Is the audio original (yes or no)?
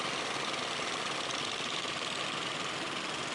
yes